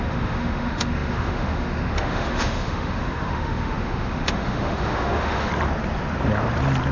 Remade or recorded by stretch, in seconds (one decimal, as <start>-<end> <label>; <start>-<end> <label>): 0.0-5.5 remade; 5.5-6.9 recorded